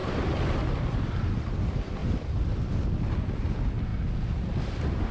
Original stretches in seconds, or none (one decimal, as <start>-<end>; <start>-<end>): 1.5-2.0; 2.7-5.1